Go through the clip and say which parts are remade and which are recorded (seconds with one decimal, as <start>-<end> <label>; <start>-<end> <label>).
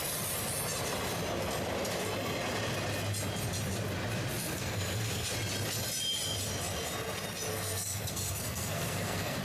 0.0-4.4 recorded; 4.4-5.3 remade; 5.3-7.5 recorded; 7.5-9.4 remade